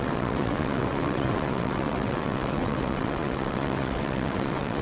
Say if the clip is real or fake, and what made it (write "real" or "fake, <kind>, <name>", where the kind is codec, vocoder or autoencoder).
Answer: fake, vocoder, WaveNeXt